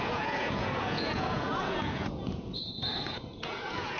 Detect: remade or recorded remade